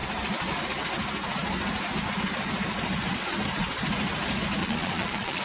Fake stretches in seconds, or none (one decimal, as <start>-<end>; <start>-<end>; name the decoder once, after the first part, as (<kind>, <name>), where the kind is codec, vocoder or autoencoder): 4.6-5.4 (vocoder, Vocos)